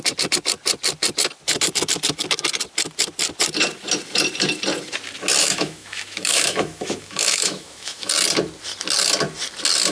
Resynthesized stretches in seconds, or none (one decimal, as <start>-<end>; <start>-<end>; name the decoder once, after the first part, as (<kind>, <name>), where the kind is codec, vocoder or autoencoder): 5.4-8.1 (autoencoder, DAC-VAE)